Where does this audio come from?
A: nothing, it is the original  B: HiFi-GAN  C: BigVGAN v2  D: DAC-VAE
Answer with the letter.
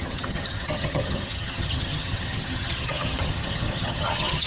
B